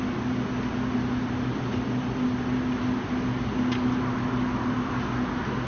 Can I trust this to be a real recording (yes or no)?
yes